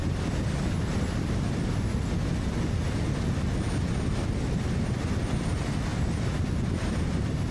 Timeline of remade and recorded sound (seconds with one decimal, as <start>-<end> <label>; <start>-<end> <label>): 0.0-7.5 recorded